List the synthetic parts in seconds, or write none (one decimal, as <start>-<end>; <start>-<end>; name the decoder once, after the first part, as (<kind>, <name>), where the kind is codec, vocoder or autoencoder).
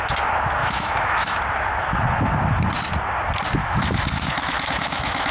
0.6-1.4 (autoencoder, DAC-VAE); 3.6-5.3